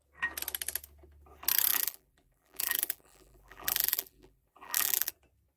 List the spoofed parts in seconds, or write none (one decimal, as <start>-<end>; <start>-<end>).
1.7-5.1